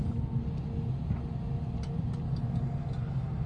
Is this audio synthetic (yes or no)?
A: no